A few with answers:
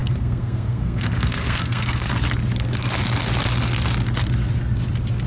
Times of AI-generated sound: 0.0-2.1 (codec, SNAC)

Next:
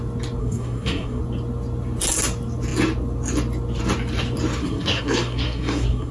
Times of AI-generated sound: 0.4-1.2 (codec, SNAC); 4.6-6.1

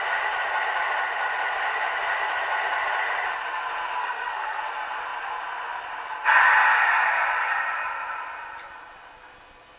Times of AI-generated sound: 4.0-4.6 (codec, SNAC)